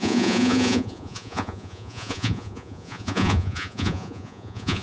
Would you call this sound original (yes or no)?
no